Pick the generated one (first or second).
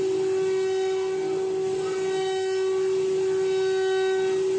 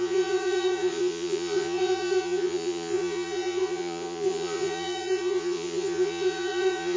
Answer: second